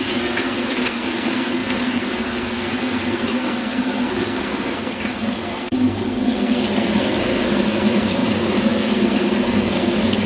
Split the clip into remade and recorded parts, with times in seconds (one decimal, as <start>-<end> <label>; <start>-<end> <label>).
0.0-10.3 remade